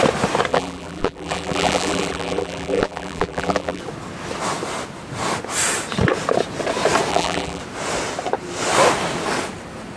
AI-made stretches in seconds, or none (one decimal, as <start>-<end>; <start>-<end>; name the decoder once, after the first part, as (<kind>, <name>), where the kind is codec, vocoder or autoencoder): 0.5-3.8 (vocoder, BigVGAN v2); 7.1-7.6